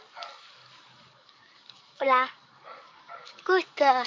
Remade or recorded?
remade